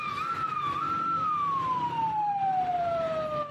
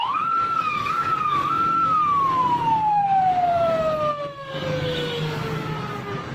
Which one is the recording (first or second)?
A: first